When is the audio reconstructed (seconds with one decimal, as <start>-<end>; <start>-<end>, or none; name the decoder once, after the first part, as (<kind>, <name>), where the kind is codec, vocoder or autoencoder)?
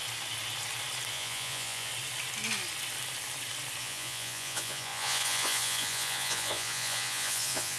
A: 1.1-1.9 (vocoder, Vocos); 3.8-7.8